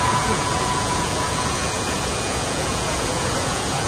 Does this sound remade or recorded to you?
remade